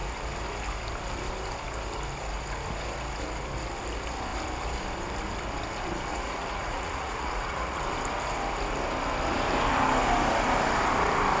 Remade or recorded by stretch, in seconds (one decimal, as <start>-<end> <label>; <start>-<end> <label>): 0.0-6.1 recorded; 6.1-7.8 remade; 7.8-11.4 recorded